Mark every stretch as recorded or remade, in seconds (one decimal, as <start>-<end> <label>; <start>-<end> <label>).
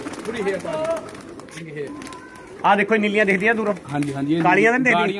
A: 0.0-5.2 recorded